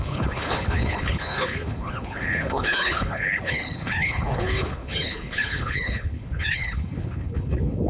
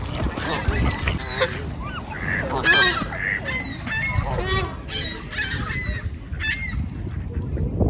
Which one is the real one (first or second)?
second